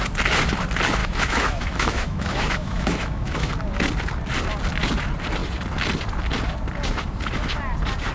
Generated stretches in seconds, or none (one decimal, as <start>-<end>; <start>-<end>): 1.0-3.5